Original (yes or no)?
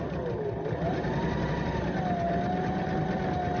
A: yes